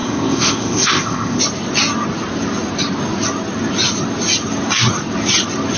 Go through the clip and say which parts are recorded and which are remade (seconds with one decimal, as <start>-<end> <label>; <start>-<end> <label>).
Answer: 0.0-1.4 remade; 1.4-5.8 recorded